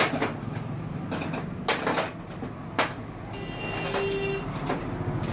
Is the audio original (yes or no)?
yes